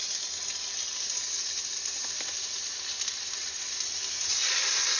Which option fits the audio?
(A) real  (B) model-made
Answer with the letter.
A